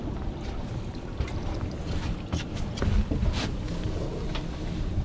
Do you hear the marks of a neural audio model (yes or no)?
no